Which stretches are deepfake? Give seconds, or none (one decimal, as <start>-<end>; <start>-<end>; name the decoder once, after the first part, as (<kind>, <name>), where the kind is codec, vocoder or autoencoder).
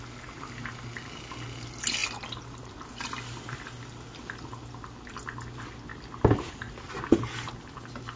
none